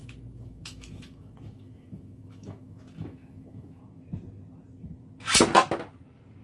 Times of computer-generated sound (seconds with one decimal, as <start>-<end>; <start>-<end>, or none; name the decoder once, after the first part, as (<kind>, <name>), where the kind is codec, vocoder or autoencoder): 0.0-3.8 (autoencoder, DAC-VAE)